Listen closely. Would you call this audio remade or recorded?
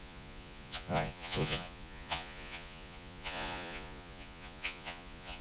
remade